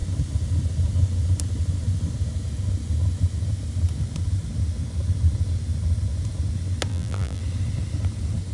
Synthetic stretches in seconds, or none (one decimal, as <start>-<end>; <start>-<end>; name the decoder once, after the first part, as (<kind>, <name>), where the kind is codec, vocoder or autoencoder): 6.9-7.4 (vocoder, BigVGAN v2)